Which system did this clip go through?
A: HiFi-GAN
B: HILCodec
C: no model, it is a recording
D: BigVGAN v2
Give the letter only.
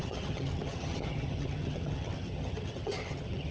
A